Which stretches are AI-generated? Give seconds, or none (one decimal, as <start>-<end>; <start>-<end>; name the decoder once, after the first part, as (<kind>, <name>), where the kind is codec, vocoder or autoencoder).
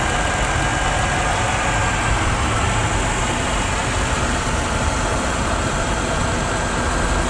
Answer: 5.1-6.2 (vocoder, BigVGAN v2)